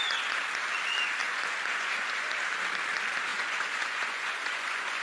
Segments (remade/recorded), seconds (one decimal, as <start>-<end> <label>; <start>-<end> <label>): 0.0-1.2 recorded; 1.2-2.3 remade; 2.3-3.3 recorded; 3.3-5.0 remade